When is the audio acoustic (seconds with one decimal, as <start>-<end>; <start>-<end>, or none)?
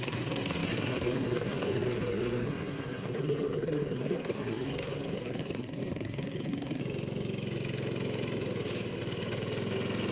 6.8-10.1